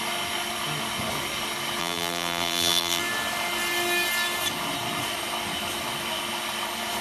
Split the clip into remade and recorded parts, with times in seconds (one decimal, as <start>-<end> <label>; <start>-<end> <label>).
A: 0.0-1.8 recorded; 1.8-3.0 remade; 3.0-7.0 recorded